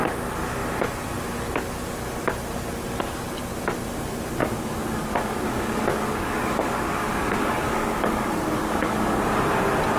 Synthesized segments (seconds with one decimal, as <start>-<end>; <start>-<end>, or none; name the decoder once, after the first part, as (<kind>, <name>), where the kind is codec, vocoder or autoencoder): 4.4-9.2 (codec, DAC)